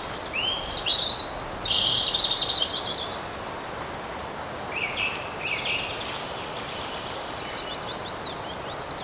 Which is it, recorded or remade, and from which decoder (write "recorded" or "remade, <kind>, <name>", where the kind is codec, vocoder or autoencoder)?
recorded